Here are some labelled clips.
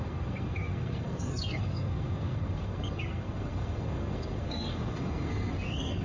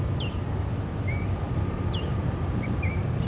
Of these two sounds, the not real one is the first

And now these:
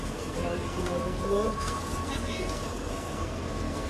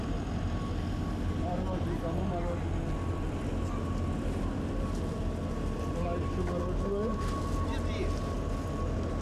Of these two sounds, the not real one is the first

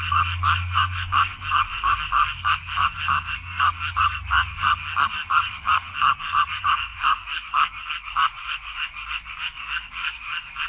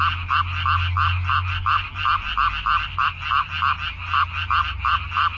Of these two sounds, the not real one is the first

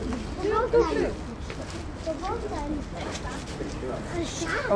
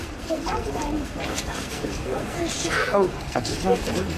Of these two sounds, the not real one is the second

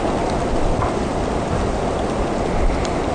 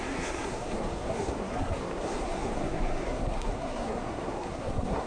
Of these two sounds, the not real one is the second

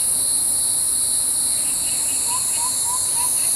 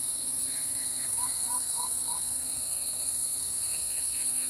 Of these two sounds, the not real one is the second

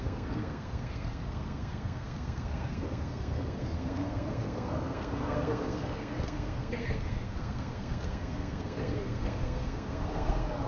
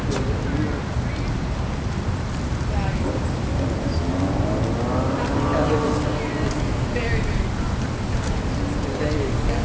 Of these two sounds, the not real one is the first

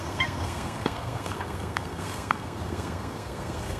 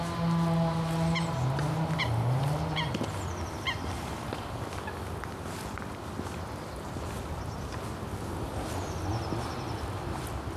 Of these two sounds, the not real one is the first